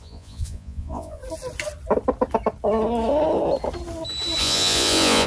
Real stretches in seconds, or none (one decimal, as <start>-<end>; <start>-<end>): 1.2-4.4